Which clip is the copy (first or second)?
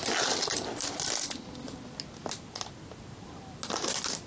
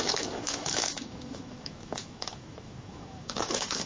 second